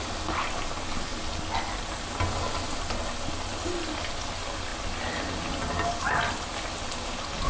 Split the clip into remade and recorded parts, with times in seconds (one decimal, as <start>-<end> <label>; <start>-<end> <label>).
0.0-7.5 recorded